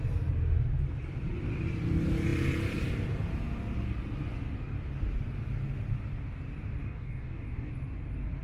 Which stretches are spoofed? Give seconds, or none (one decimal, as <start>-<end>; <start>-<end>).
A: 6.8-7.7